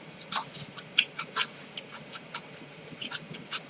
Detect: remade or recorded remade